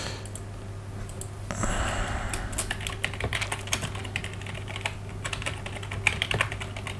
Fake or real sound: real